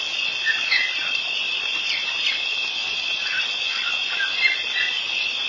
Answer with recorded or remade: recorded